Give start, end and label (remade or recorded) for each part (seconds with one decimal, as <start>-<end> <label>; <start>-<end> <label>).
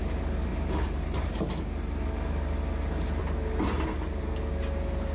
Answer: 0.0-5.1 recorded